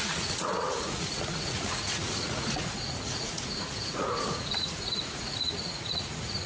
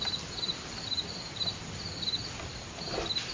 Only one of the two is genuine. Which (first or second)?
second